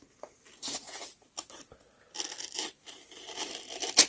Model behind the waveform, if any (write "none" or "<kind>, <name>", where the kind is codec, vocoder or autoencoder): none